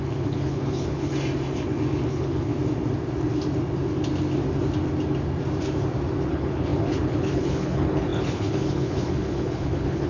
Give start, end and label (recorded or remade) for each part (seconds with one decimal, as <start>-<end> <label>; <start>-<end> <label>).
0.0-1.1 remade; 1.1-2.1 recorded; 2.1-2.5 remade; 2.5-6.3 recorded; 6.3-10.1 remade